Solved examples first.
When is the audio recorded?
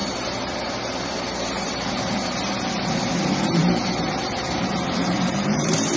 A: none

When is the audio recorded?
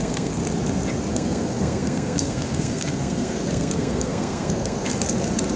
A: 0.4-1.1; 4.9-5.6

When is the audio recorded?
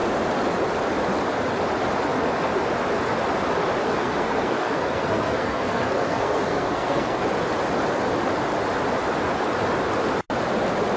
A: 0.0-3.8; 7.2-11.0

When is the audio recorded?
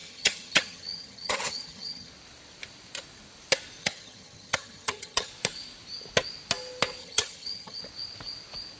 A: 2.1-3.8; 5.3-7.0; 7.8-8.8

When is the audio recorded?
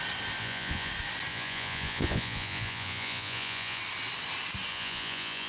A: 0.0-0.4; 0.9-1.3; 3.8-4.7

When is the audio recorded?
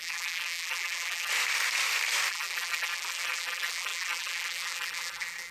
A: 1.3-2.3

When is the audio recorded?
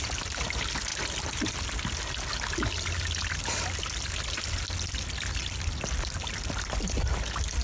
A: 0.0-7.6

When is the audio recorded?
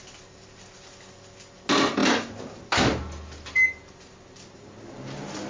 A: 0.0-5.5